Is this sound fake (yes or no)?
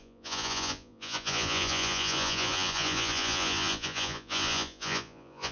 yes